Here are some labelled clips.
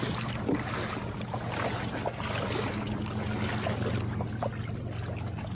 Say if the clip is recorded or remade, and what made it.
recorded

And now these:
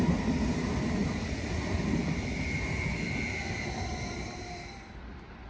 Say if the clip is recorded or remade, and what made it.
recorded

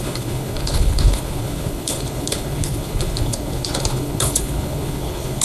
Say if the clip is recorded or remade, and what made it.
remade, codec, HILCodec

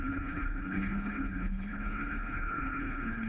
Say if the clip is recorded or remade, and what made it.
remade, codec, HILCodec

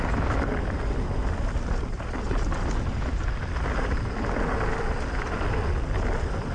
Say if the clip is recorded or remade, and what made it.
recorded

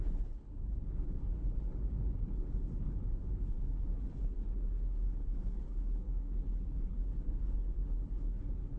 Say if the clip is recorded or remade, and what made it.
remade, codec, HILCodec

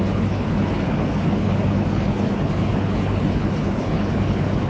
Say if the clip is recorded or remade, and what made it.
remade, codec, HILCodec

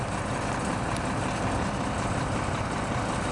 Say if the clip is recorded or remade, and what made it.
recorded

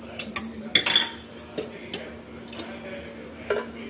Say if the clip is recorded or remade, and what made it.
recorded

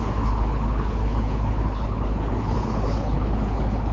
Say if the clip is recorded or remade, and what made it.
remade, codec, HILCodec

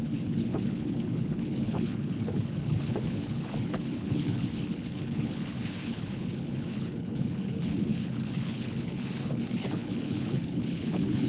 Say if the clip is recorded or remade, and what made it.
remade, codec, HILCodec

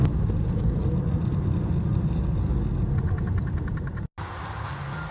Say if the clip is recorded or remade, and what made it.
recorded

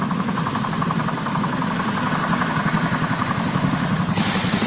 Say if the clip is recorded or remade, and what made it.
recorded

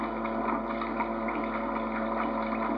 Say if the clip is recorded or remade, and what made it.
recorded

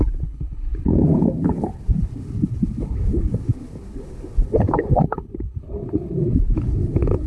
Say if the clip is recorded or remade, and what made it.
remade, codec, HILCodec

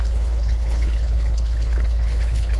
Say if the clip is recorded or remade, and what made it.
remade, codec, HILCodec